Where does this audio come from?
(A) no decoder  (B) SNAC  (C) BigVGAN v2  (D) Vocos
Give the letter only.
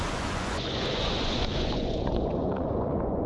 D